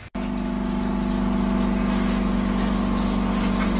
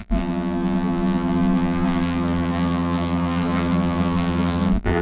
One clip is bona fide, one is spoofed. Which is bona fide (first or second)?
first